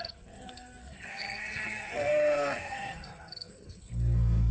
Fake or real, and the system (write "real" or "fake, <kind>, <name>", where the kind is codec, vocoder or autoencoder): fake, codec, SNAC